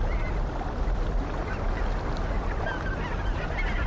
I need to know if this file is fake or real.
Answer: real